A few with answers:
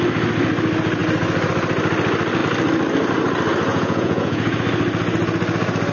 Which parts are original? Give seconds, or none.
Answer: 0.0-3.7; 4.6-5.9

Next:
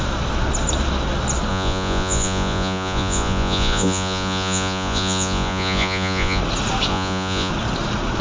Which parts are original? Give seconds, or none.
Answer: 0.0-1.5; 6.4-6.9; 7.5-8.2

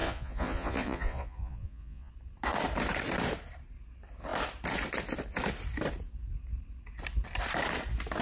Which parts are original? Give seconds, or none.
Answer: 2.1-8.2

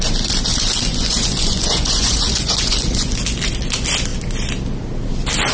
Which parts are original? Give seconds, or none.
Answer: 0.0-0.5; 3.2-5.5

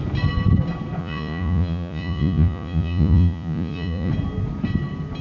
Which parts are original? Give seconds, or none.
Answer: 0.0-1.0; 4.1-5.2

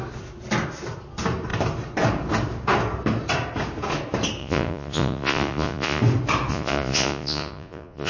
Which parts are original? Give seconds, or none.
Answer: 0.0-4.4; 6.0-6.5